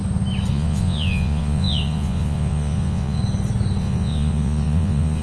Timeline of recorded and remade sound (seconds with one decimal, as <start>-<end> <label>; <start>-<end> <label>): 0.0-0.5 recorded; 0.5-3.2 remade; 3.2-3.8 recorded; 3.8-5.2 remade